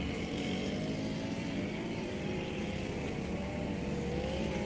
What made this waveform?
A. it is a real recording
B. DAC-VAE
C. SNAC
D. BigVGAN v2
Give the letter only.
A